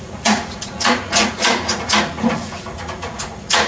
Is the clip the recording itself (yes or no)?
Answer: no